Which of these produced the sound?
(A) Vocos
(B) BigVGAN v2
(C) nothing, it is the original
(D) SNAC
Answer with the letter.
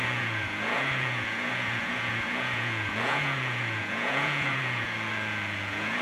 A